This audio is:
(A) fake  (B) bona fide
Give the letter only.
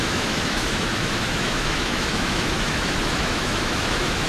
A